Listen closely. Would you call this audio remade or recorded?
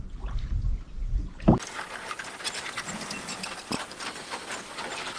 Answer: recorded